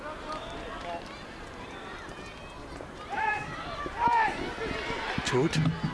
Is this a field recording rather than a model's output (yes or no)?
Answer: yes